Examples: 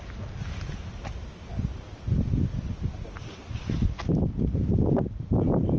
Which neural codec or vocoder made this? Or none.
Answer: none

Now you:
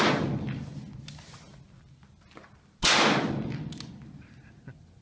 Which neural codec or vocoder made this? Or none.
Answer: none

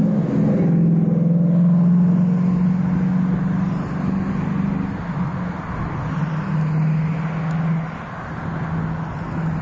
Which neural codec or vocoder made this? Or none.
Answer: none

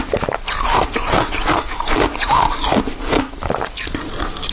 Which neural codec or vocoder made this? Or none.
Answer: none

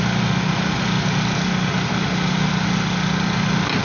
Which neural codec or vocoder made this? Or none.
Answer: none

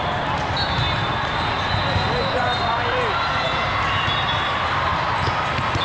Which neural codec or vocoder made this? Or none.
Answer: none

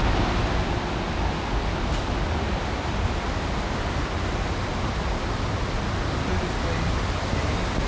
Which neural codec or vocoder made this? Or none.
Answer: none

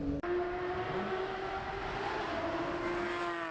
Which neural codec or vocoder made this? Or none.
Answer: none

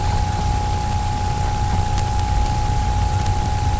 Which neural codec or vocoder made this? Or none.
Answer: none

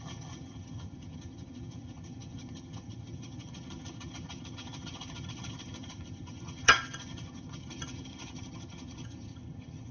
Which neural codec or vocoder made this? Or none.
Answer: vocoder, HiFi-GAN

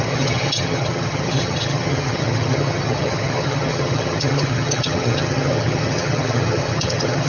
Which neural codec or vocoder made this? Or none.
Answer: vocoder, HiFi-GAN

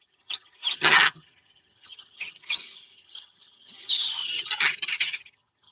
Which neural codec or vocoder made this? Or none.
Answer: vocoder, HiFi-GAN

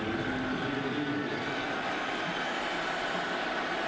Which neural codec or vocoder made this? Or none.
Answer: none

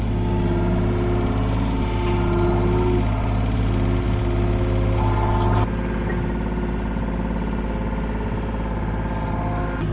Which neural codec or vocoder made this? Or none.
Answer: none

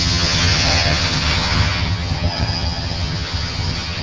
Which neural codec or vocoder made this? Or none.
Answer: vocoder, HiFi-GAN